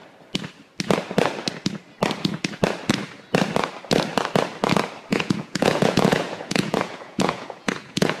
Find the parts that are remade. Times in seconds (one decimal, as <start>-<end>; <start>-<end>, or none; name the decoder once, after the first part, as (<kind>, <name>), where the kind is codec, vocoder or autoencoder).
5.1-8.2 (vocoder, Vocos)